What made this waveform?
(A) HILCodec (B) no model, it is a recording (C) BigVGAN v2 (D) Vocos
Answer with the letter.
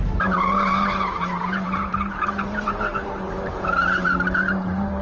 C